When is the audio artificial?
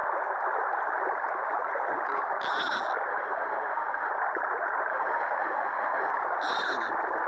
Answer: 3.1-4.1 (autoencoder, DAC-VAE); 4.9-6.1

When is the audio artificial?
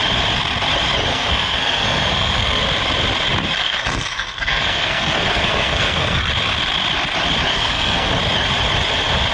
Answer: 1.1-2.6 (codec, SNAC); 3.6-6.2; 7.5-8.1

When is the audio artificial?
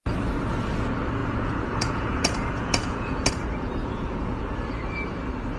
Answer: 1.2-3.3 (vocoder, Vocos); 3.8-4.4